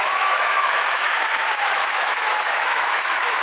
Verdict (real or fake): fake